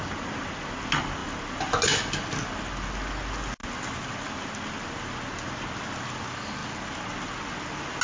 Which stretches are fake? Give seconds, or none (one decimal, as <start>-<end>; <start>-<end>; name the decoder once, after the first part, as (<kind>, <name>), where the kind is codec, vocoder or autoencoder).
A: none